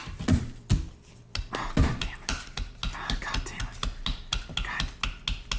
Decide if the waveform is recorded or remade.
recorded